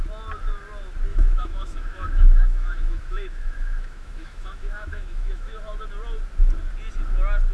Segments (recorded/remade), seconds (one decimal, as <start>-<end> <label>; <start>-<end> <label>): 0.0-1.1 recorded; 1.1-5.6 remade; 5.6-7.5 recorded